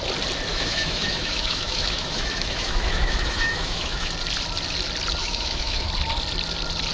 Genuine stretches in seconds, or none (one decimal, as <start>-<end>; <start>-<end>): 0.0-0.5; 4.1-5.2; 5.9-6.9